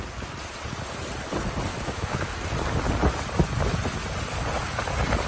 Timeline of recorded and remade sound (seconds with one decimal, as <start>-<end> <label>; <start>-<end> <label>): 0.0-1.7 recorded; 1.7-2.3 remade; 2.3-5.3 recorded